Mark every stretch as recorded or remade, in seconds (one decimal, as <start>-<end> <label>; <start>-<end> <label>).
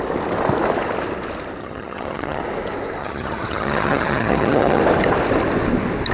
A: 0.0-1.6 recorded; 1.6-2.4 remade; 2.4-3.0 recorded; 3.0-4.8 remade; 4.8-6.1 recorded